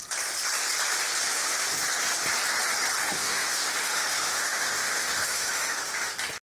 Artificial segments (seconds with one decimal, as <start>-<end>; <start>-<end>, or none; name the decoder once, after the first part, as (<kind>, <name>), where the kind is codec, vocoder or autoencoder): 1.3-1.8 (autoencoder, DAC-VAE); 3.0-6.1